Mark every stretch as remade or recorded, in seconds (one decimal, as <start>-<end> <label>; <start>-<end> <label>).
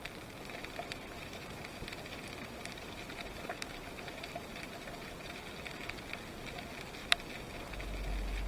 0.0-0.6 recorded; 0.6-5.4 remade; 5.4-8.5 recorded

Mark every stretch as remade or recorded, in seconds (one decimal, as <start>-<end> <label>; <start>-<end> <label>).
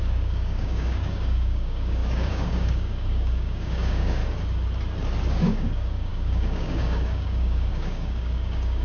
0.0-4.2 remade; 4.2-5.3 recorded; 5.3-8.8 remade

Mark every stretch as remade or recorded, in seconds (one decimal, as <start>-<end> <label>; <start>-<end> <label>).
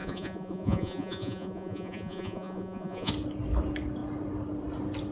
0.0-3.1 remade; 3.1-5.1 recorded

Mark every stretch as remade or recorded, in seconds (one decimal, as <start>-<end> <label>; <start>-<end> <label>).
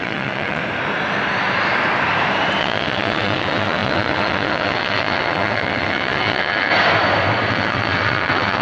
0.0-0.6 remade; 0.6-2.6 recorded; 2.6-6.7 remade; 6.7-7.5 recorded; 7.5-8.6 remade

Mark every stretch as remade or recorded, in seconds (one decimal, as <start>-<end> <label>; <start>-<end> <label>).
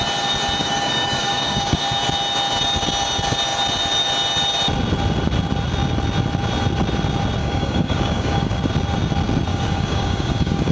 0.0-0.6 recorded; 0.6-1.8 remade; 1.8-7.4 recorded; 7.4-8.6 remade; 8.6-9.5 recorded; 9.5-10.7 remade